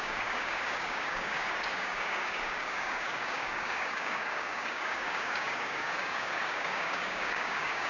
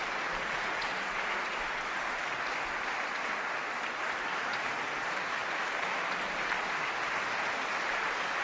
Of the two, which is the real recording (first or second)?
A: second